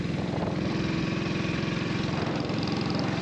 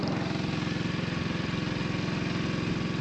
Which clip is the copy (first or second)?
first